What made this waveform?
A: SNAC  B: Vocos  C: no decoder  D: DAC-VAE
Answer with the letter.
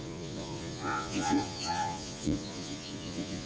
B